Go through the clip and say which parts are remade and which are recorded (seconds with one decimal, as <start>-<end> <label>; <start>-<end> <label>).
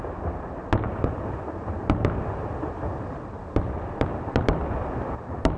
0.0-5.6 recorded